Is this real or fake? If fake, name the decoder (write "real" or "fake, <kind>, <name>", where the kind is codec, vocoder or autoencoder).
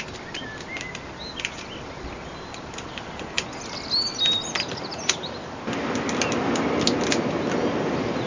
real